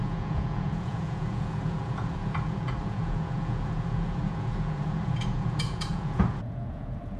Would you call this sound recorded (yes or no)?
no